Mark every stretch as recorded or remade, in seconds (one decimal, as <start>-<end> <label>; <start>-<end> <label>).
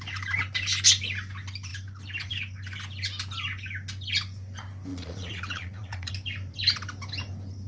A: 0.0-4.9 recorded; 4.9-6.1 remade; 6.1-7.7 recorded